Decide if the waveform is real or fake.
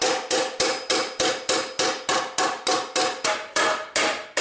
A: real